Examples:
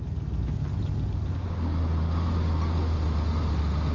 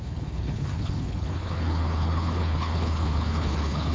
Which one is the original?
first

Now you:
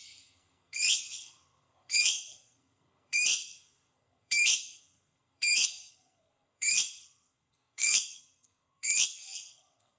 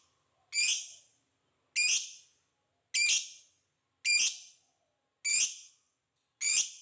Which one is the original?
second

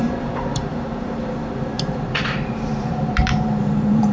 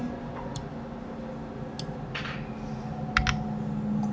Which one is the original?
second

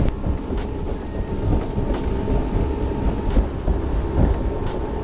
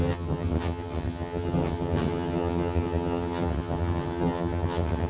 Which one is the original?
first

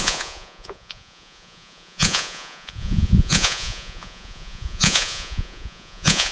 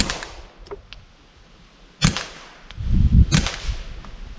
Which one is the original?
second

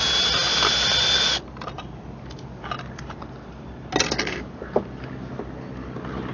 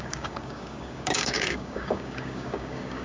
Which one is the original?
first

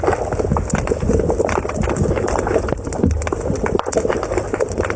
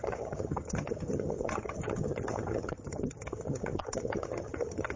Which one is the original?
first